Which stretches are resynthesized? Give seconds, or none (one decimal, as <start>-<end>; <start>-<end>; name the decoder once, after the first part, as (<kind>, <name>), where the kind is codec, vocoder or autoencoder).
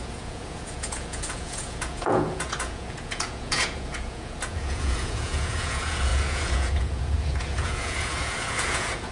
0.0-9.1 (vocoder, Vocos)